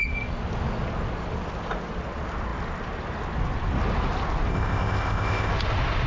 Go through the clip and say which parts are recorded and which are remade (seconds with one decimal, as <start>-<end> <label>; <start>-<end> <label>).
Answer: 0.0-4.5 recorded; 4.5-5.5 remade; 5.5-6.1 recorded